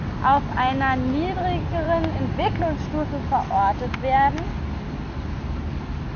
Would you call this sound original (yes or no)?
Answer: yes